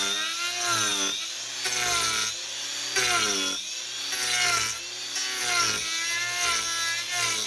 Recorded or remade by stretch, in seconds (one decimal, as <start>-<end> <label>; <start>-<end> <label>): 0.0-7.5 recorded